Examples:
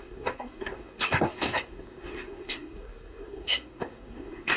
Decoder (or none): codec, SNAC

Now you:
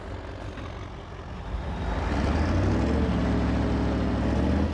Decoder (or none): none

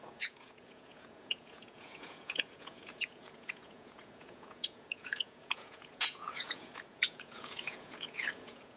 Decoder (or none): vocoder, Vocos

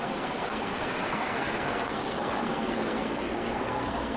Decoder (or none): codec, SNAC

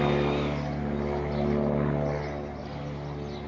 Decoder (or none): none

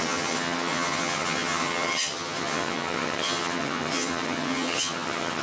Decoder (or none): vocoder, HiFi-GAN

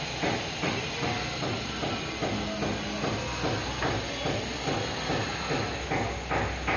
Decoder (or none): none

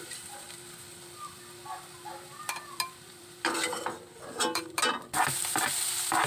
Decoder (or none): vocoder, BigVGAN v2